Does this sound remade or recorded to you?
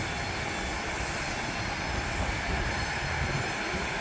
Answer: recorded